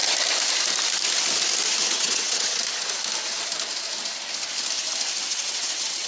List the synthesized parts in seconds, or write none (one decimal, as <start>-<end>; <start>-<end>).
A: 1.9-2.6; 5.2-6.1